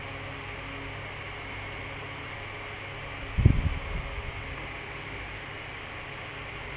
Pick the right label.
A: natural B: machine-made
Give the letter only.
A